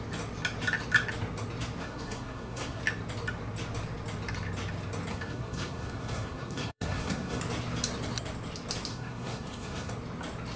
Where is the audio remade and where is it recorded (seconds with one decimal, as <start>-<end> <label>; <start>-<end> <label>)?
0.0-1.8 recorded; 1.8-2.8 remade; 2.8-5.1 recorded; 5.1-7.4 remade; 7.4-8.9 recorded; 8.9-9.9 remade; 9.9-10.6 recorded